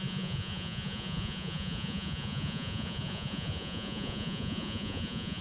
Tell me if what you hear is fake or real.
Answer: fake